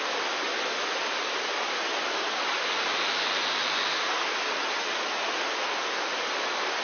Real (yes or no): yes